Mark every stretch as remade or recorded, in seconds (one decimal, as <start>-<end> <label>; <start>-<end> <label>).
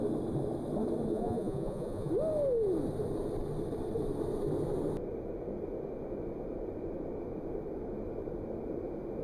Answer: 0.0-1.1 recorded; 1.1-2.1 remade; 2.1-9.2 recorded